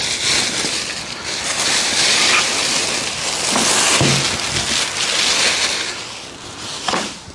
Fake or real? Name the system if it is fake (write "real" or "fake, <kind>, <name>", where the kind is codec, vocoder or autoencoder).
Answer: real